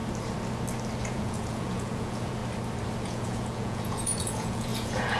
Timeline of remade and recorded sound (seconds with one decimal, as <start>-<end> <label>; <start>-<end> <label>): 0.0-1.0 recorded; 1.0-2.4 remade; 2.4-3.0 recorded; 3.0-5.2 remade